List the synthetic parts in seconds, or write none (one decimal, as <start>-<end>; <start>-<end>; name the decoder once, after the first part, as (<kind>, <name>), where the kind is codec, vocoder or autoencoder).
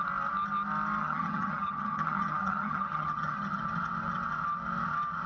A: 1.0-3.6 (vocoder, HiFi-GAN)